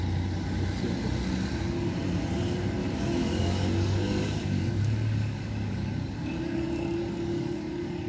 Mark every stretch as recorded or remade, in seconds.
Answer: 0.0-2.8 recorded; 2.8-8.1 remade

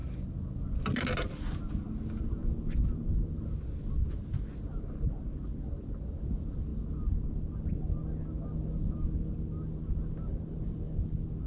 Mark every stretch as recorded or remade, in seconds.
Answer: 0.0-11.5 recorded

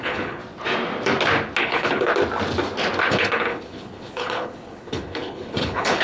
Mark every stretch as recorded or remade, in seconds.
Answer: 0.0-0.4 remade; 0.4-1.6 recorded; 1.6-2.1 remade; 2.1-3.1 recorded; 3.1-6.0 remade

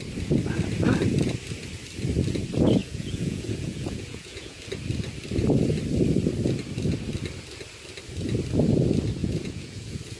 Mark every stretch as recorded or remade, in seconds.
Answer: 0.0-2.8 recorded; 2.8-4.6 remade; 4.6-9.2 recorded; 9.2-10.2 remade